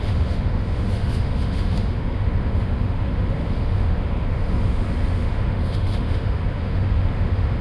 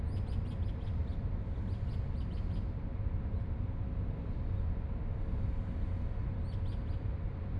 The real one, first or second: second